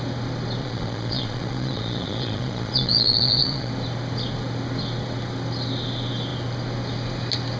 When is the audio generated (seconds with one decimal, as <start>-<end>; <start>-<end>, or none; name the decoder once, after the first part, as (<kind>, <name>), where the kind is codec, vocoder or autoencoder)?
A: 0.6-3.7 (vocoder, Vocos)